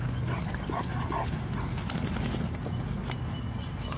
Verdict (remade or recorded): recorded